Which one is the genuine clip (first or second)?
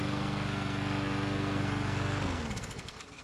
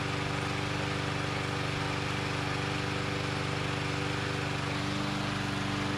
second